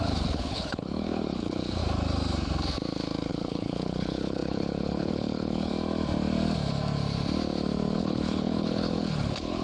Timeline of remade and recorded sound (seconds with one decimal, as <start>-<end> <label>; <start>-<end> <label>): 0.0-1.8 remade; 1.8-3.3 recorded; 3.3-5.7 remade; 5.7-8.0 recorded; 8.0-9.6 remade